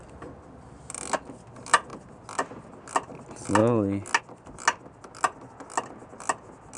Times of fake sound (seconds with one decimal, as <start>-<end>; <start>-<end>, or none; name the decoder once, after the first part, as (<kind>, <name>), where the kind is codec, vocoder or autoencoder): none